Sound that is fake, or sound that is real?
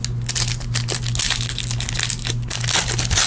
real